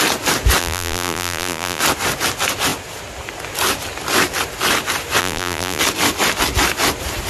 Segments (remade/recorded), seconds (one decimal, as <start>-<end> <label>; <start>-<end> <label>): 0.0-0.6 recorded; 0.6-1.8 remade; 1.8-5.2 recorded; 5.2-5.8 remade; 5.8-7.3 recorded